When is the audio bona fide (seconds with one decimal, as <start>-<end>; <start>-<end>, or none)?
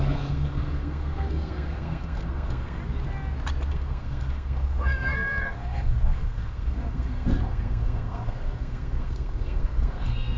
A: 2.8-3.7